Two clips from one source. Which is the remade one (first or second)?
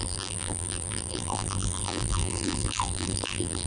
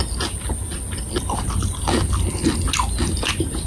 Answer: first